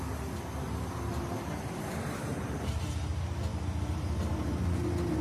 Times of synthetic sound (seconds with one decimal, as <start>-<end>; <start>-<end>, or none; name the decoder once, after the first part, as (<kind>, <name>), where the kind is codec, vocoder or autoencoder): 1.1-2.9 (vocoder, BigVGAN v2)